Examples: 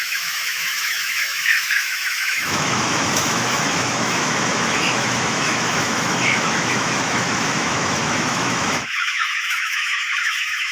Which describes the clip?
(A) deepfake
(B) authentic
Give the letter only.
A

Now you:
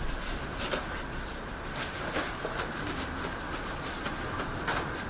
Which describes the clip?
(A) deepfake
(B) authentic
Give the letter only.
B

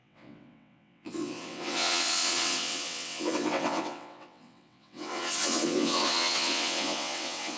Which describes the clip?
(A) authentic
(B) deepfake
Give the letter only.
B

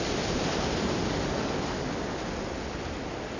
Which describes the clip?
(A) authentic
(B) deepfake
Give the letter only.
A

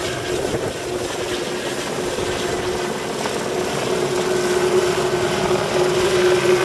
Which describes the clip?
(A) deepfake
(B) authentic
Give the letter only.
B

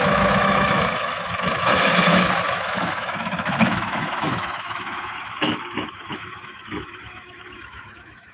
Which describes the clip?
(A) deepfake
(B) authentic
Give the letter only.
A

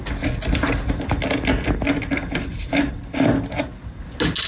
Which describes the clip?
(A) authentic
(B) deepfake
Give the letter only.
A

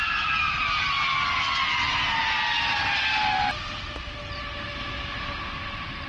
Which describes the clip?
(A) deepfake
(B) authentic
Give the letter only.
B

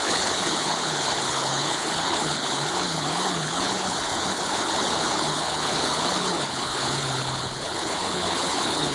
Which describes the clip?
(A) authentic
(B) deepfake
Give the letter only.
B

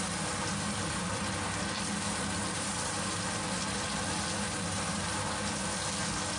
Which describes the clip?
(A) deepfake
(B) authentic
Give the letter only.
B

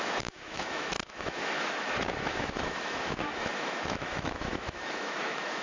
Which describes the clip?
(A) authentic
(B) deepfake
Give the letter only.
B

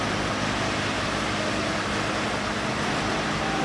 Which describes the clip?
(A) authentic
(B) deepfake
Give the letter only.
A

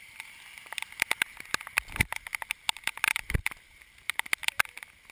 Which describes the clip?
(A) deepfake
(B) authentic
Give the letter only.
B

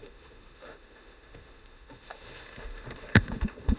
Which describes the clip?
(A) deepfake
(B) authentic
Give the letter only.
A